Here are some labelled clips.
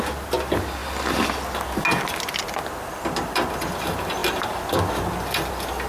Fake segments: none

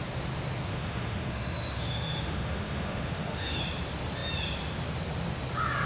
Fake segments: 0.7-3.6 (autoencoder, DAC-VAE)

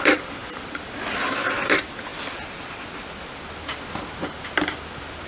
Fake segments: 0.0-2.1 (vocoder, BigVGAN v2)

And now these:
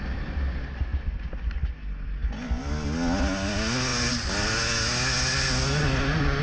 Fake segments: none

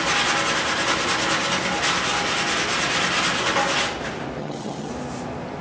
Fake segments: 4.4-4.9 (vocoder, HiFi-GAN)

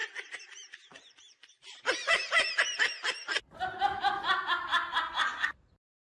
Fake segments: 0.0-3.4 (vocoder, BigVGAN v2); 4.7-6.0